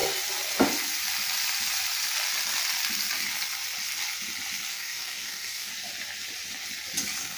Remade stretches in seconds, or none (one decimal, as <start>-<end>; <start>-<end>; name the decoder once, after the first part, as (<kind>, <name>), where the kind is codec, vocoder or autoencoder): 4.7-5.7 (codec, DAC)